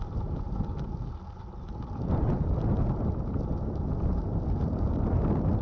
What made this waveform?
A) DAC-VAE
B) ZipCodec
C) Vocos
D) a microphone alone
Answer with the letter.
D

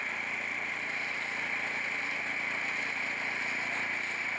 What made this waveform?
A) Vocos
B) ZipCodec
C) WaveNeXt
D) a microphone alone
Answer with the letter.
D